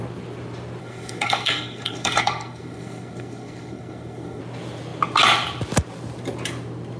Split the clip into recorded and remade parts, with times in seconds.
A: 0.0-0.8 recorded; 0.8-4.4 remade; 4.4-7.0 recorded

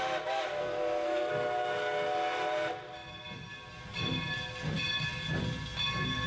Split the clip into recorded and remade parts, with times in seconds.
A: 0.0-0.6 recorded; 0.6-1.3 remade; 1.3-6.3 recorded

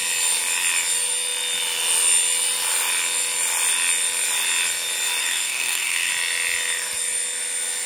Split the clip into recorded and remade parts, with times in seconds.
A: 0.0-5.2 recorded; 5.2-6.1 remade; 6.1-7.9 recorded

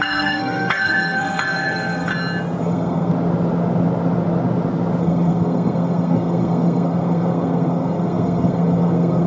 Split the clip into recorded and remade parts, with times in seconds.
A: 0.0-2.1 remade; 2.1-2.6 recorded; 2.6-3.1 remade; 3.1-5.0 recorded; 5.0-9.3 remade

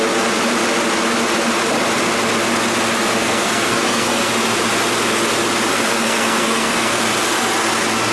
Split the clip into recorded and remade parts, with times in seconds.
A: 0.0-3.2 recorded; 3.2-4.3 remade; 4.3-5.7 recorded; 5.7-7.0 remade; 7.0-8.1 recorded

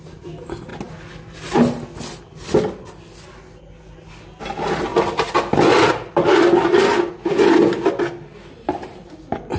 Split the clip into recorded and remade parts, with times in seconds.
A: 0.0-9.6 recorded